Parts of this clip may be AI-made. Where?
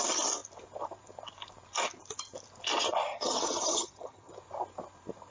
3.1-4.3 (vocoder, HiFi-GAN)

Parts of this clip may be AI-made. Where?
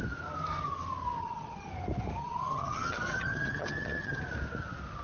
1.2-1.7 (vocoder, HiFi-GAN); 2.2-4.2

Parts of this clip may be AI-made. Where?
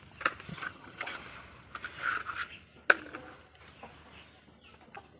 0.5-1.2 (vocoder, HiFi-GAN)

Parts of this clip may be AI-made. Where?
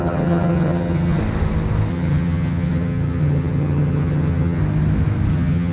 0.0-1.2 (vocoder, HiFi-GAN); 1.9-4.6; 5.3-5.7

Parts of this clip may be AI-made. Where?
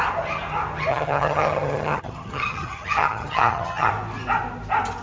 0.9-3.9 (vocoder, HiFi-GAN)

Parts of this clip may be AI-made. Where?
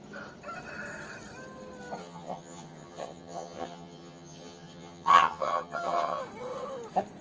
2.0-6.2 (vocoder, HiFi-GAN)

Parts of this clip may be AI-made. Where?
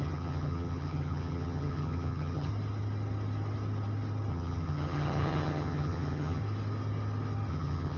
0.0-2.5 (vocoder, HiFi-GAN); 4.3-6.4; 7.5-8.0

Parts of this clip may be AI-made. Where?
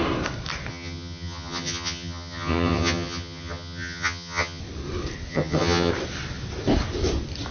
0.7-4.6 (vocoder, HiFi-GAN); 5.3-5.9